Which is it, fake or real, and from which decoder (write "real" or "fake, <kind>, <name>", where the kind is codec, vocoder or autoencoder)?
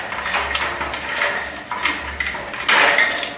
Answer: real